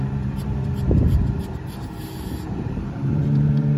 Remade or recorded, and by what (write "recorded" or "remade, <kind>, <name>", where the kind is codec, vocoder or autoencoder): remade, vocoder, BigVGAN v2